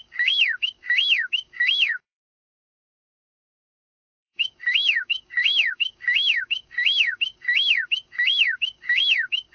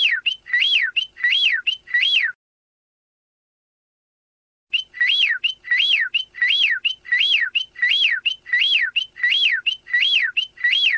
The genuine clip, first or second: second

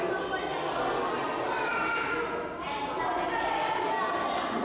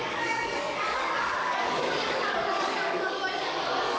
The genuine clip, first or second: first